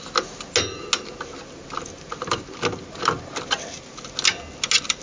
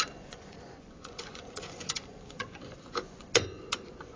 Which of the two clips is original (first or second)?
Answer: first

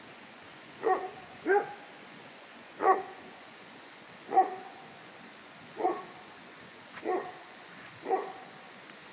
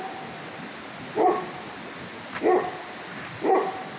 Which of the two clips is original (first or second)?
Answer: second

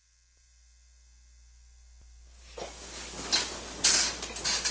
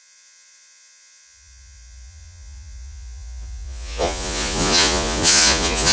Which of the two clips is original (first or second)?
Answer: first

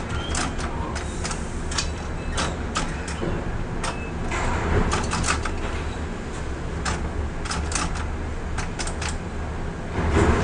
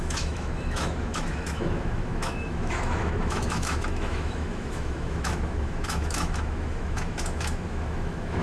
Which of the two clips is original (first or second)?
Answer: first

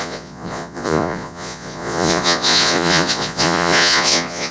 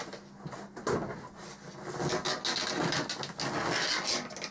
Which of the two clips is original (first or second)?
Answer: second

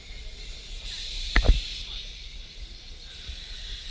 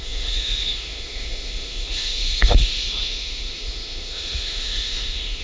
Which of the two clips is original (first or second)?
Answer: first